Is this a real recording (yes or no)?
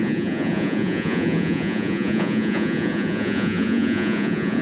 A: no